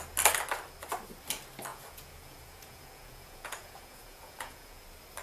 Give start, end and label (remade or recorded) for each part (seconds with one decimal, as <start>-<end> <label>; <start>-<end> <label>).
0.0-1.7 recorded; 1.7-4.8 remade; 4.8-5.2 recorded